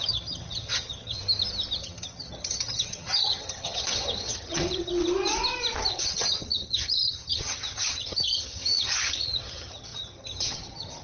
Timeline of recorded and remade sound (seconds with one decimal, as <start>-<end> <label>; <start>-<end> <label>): 0.0-1.2 remade; 1.2-1.8 recorded; 1.8-4.9 remade; 4.9-5.9 recorded; 5.9-11.0 remade